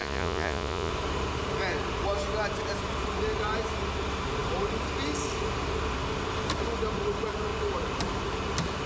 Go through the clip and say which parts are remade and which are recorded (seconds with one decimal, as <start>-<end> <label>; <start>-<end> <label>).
0.0-0.9 remade; 0.9-8.9 recorded